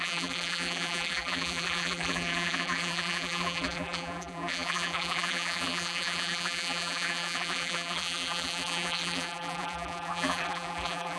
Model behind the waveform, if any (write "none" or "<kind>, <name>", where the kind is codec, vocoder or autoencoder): vocoder, BigVGAN v2